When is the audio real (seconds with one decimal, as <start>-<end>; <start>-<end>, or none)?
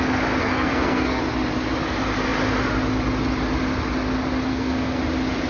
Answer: 0.0-0.4; 1.2-4.5; 5.0-5.5